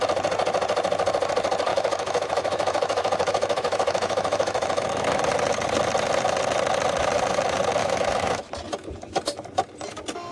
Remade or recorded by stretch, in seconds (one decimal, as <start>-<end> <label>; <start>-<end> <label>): 0.0-1.7 recorded; 1.7-5.2 remade; 5.2-7.8 recorded; 7.8-8.5 remade; 8.5-10.3 recorded